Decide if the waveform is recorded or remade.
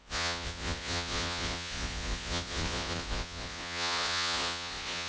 remade